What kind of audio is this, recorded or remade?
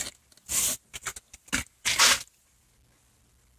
recorded